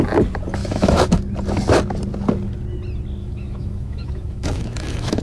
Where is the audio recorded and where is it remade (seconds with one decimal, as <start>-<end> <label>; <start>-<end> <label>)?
0.0-0.6 recorded; 0.6-1.2 remade; 1.2-3.2 recorded; 3.2-5.2 remade